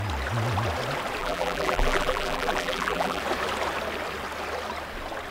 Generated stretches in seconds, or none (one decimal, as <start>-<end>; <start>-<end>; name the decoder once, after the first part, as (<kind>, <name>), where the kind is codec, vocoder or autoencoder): 1.2-3.2 (vocoder, BigVGAN v2)